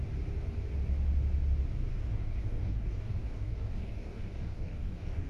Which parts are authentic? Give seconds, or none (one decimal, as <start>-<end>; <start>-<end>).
0.0-1.9

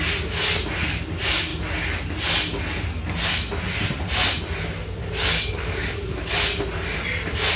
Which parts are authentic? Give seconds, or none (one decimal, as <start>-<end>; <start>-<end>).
0.0-5.0; 6.3-7.6

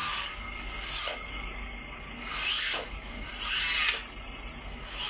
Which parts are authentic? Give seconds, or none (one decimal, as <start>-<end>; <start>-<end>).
3.3-4.6

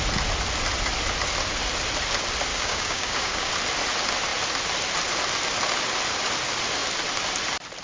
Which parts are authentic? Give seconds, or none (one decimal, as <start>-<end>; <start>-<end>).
0.0-2.5; 3.5-7.8

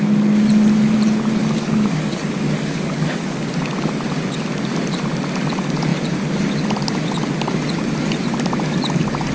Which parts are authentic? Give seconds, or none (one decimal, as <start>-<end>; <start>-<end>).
0.0-1.4; 3.5-9.3